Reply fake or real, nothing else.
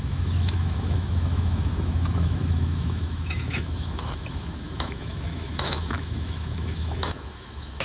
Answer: fake